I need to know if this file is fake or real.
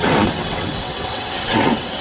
fake